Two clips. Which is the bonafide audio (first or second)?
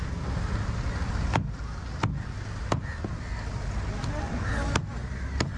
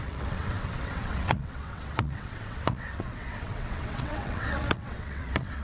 first